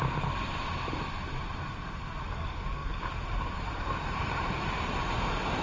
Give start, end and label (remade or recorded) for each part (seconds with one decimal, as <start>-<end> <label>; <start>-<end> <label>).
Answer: 0.0-0.6 remade; 0.6-1.2 recorded; 1.2-2.0 remade; 2.0-2.8 recorded; 2.8-5.6 remade